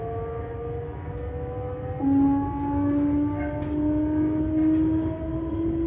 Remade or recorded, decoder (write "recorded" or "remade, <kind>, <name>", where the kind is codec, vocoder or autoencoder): recorded